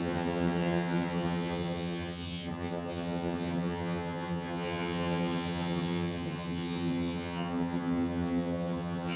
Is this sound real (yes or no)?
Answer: no